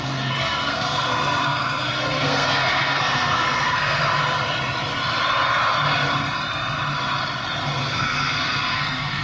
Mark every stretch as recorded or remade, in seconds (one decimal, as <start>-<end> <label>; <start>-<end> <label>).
0.0-4.0 remade; 4.0-7.8 recorded; 7.8-9.2 remade